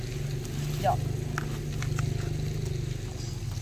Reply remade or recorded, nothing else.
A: recorded